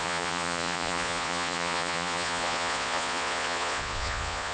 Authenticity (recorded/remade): remade